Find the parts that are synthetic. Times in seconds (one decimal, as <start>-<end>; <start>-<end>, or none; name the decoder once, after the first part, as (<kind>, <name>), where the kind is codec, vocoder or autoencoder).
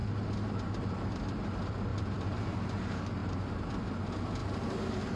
1.9-2.5 (vocoder, BigVGAN v2); 4.4-5.2